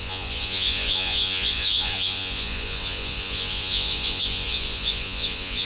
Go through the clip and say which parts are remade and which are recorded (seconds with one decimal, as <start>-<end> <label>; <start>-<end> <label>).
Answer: 0.0-5.6 remade